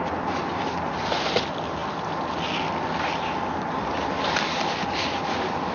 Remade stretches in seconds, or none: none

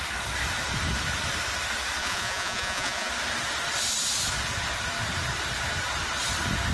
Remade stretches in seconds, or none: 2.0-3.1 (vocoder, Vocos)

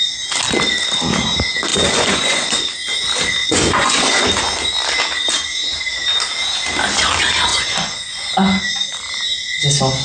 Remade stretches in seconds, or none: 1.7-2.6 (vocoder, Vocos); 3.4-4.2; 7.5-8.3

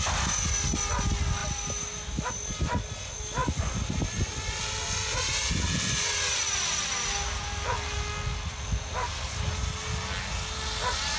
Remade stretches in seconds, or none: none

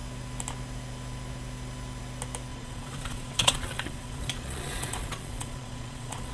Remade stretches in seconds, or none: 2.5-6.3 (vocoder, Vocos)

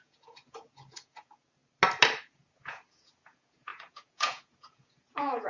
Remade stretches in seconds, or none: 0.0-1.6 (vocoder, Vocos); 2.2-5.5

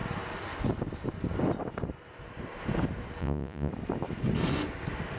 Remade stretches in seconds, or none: 3.2-3.7 (vocoder, Vocos)

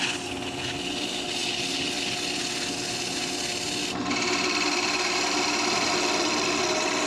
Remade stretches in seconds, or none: none